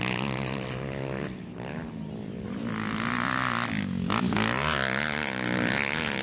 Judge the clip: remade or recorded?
recorded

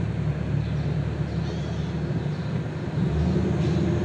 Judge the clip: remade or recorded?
recorded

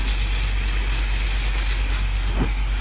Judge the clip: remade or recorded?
recorded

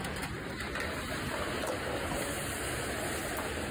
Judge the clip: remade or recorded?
recorded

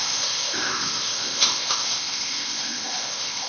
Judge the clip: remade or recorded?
remade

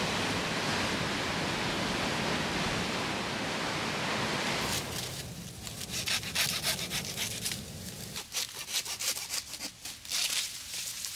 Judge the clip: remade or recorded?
recorded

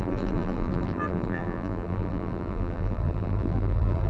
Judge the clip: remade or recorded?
remade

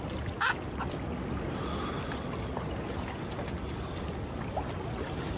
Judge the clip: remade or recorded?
recorded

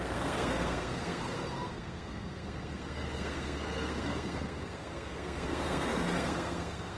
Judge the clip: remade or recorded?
remade